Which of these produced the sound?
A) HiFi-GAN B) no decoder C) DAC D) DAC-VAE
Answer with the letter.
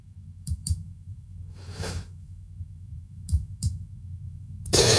D